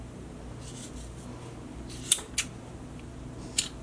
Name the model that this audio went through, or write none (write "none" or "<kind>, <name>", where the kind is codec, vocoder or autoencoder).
none